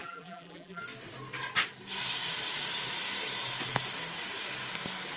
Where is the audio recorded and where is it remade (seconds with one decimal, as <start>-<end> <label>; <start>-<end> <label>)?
0.0-0.8 remade; 0.8-5.2 recorded